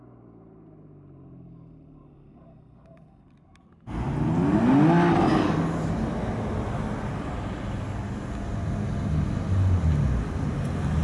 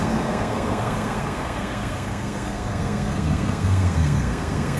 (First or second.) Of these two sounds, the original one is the first